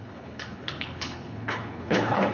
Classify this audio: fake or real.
fake